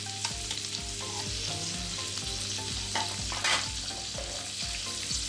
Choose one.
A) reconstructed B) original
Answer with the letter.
B